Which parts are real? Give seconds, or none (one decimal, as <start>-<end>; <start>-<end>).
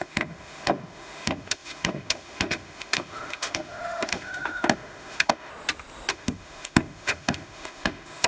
5.5-6.1